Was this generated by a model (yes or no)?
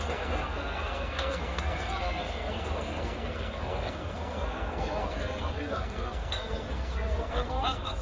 yes